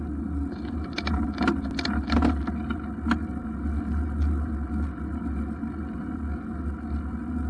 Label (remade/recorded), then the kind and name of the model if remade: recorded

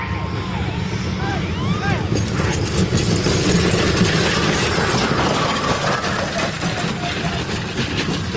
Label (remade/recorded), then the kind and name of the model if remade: recorded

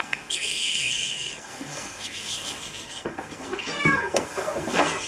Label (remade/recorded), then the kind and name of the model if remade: remade, codec, SNAC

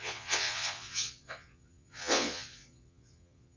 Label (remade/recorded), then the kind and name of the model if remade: remade, vocoder, Vocos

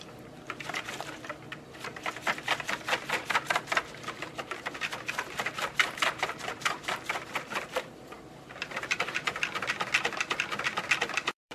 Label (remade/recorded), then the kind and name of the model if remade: remade, vocoder, BigVGAN v2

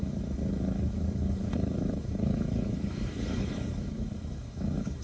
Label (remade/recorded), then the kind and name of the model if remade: remade, autoencoder, DAC-VAE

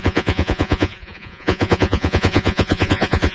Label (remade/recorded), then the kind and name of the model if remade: remade, vocoder, Vocos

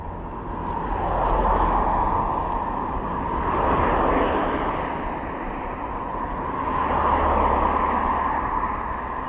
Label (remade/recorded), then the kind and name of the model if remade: recorded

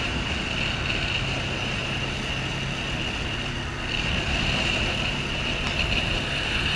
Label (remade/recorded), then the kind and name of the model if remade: recorded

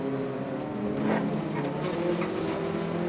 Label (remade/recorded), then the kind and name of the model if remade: recorded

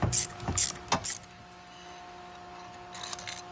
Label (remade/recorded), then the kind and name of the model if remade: recorded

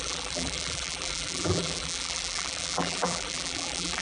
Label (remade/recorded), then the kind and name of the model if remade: remade, vocoder, BigVGAN v2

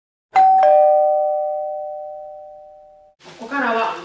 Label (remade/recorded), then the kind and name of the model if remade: recorded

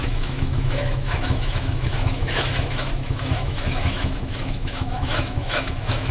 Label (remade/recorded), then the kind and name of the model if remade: remade, autoencoder, DAC-VAE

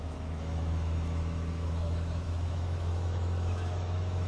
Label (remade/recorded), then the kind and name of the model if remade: remade, autoencoder, DAC-VAE